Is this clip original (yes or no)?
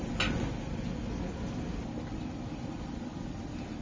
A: yes